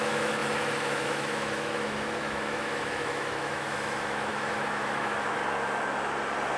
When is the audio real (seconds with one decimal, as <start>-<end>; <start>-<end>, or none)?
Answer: 5.4-6.6